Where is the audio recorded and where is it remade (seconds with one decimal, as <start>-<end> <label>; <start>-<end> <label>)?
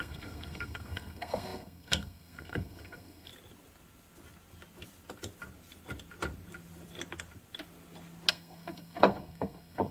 0.0-3.3 remade; 3.3-8.3 recorded; 8.3-9.9 remade